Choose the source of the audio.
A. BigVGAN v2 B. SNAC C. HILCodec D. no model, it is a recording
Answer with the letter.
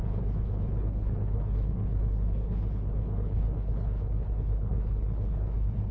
C